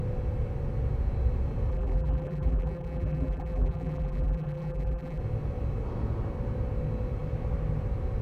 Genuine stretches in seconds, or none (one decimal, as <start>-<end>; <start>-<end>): 0.0-1.7; 5.2-8.2